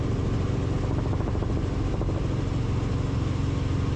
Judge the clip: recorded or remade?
recorded